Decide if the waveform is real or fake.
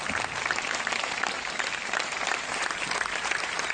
fake